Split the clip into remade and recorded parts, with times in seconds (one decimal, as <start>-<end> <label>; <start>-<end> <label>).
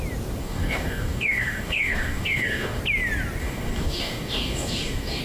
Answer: 0.0-0.4 recorded; 0.4-2.8 remade; 2.8-3.4 recorded; 3.4-5.2 remade